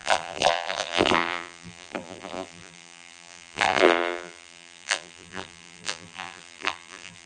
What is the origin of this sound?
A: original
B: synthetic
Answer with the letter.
B